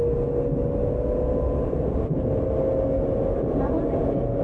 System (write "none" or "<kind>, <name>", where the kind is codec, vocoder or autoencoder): none